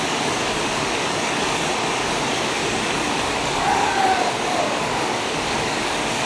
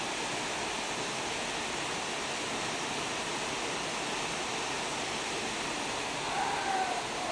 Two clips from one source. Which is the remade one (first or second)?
first